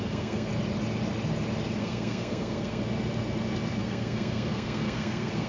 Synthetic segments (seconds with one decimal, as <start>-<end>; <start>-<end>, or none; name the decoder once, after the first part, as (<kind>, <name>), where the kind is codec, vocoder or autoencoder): 0.0-0.5 (codec, SNAC); 1.8-2.8; 3.8-5.5

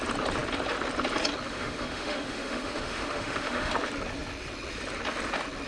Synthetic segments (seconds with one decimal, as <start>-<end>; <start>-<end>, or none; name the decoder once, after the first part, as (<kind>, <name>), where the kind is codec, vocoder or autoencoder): 1.5-3.7 (autoencoder, DAC-VAE)